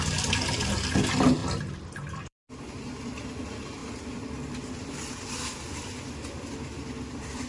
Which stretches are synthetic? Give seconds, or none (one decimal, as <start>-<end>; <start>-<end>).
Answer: 1.4-3.3; 3.8-4.9